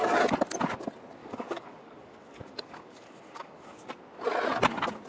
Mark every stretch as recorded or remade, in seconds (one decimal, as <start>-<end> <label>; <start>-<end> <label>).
0.0-1.2 recorded; 1.2-3.9 remade; 3.9-5.1 recorded